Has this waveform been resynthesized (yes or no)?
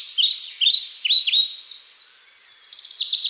no